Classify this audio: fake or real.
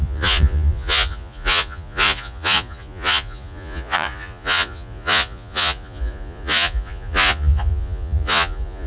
fake